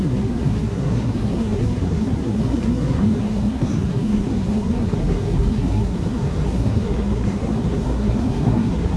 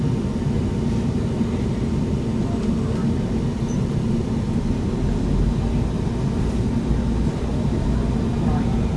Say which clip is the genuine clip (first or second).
second